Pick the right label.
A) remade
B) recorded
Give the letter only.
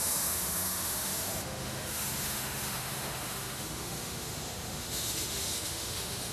A